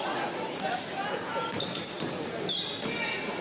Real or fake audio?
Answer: real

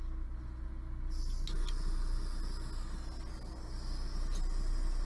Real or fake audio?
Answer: real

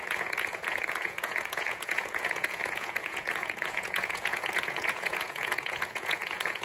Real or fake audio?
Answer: fake